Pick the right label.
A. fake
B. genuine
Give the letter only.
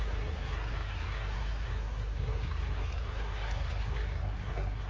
A